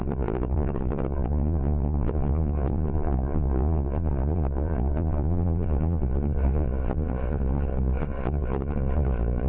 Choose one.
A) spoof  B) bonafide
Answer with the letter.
A